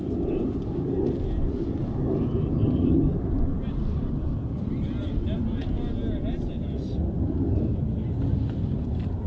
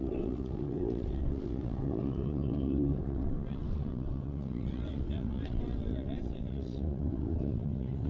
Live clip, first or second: first